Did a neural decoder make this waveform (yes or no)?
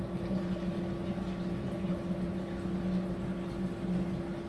no